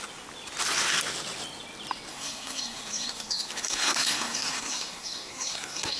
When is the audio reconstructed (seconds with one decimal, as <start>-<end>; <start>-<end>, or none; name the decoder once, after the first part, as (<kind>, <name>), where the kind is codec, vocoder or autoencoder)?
2.1-6.0 (codec, SNAC)